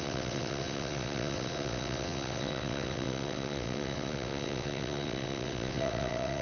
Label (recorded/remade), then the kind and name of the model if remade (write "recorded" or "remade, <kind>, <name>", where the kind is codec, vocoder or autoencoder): remade, vocoder, WaveNeXt